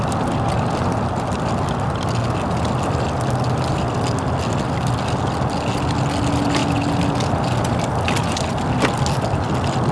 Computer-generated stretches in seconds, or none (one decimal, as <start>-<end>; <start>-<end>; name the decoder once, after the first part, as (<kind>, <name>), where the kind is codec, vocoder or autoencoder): none